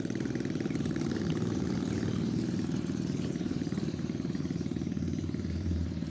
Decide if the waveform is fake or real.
fake